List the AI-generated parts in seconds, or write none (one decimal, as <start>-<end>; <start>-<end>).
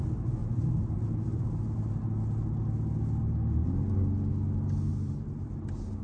4.9-5.5